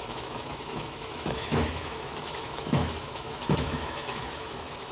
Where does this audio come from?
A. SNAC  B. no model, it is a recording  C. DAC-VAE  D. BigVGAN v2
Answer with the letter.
C